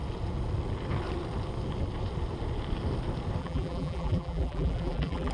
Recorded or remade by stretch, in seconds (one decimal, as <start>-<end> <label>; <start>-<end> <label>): 0.0-3.4 recorded; 3.4-5.3 remade